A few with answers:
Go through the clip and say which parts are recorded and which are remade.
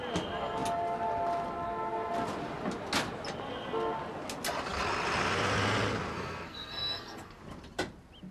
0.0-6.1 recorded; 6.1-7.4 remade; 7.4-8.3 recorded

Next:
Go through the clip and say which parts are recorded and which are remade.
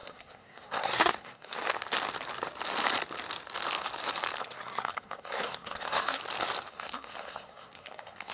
0.0-1.6 remade; 1.6-4.4 recorded; 4.4-6.2 remade; 6.2-6.7 recorded; 6.7-8.3 remade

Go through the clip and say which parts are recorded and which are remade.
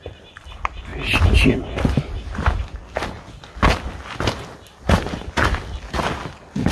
0.0-6.7 recorded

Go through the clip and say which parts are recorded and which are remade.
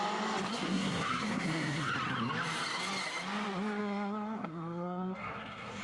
0.0-0.5 recorded; 0.5-1.9 remade; 1.9-3.8 recorded; 3.8-5.8 remade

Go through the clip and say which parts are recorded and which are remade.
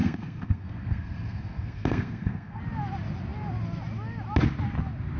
0.0-2.6 remade; 2.6-5.2 recorded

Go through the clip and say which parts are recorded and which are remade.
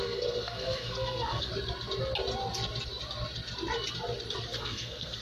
0.0-1.5 remade; 1.5-4.6 recorded; 4.6-5.2 remade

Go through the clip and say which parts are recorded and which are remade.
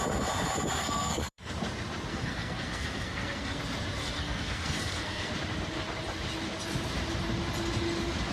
0.0-0.8 recorded; 0.8-1.5 remade; 1.5-2.1 recorded; 2.1-3.6 remade; 3.6-4.0 recorded; 4.0-5.3 remade; 5.3-8.3 recorded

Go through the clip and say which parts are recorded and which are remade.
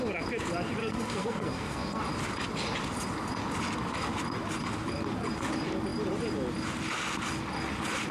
0.0-0.8 recorded; 0.8-2.0 remade; 2.0-8.1 recorded